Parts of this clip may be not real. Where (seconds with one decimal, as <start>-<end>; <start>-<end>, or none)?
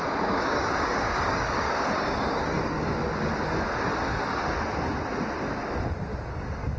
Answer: 0.0-3.0; 6.3-6.8